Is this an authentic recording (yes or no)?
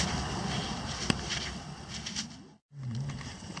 yes